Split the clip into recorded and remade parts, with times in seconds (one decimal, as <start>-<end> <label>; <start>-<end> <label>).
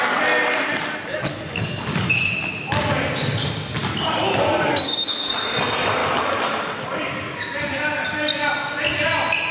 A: 0.0-1.3 recorded; 1.3-2.3 remade; 2.3-4.7 recorded; 4.7-5.3 remade; 5.3-6.0 recorded; 6.0-7.1 remade; 7.1-9.5 recorded